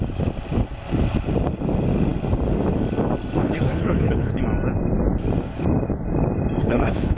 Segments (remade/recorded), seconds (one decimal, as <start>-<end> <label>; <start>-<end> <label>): 0.0-3.4 recorded; 3.4-4.4 remade; 4.4-6.6 recorded; 6.6-7.2 remade